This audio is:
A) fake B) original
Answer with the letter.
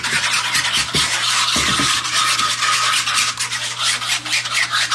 B